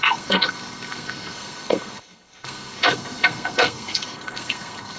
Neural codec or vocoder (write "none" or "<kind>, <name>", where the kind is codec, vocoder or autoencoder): codec, SNAC